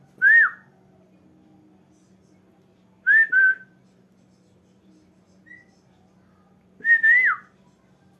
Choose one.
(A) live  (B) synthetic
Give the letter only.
A